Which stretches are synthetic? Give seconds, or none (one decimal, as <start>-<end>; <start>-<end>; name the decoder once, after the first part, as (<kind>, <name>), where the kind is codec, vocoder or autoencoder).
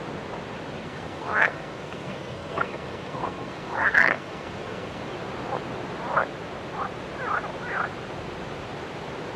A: 0.8-5.0 (codec, SNAC)